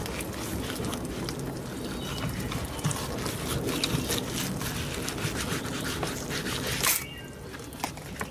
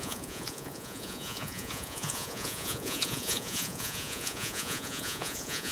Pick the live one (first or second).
first